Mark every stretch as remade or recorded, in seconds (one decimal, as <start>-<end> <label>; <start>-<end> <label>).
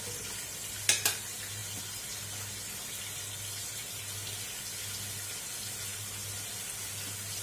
0.0-7.4 recorded